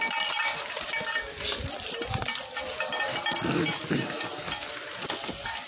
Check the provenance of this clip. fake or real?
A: real